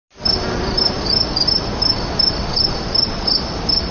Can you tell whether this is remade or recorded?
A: recorded